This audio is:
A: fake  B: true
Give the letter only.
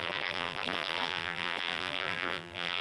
A